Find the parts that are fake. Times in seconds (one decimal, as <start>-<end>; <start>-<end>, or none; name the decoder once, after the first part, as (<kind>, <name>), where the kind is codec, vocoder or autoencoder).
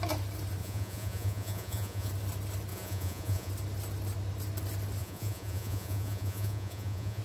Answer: 0.6-2.1 (vocoder, Vocos); 2.7-3.5; 5.0-7.2